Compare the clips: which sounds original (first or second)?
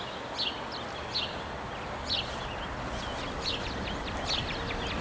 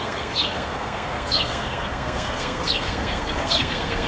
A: first